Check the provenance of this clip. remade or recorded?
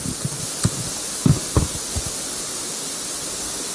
recorded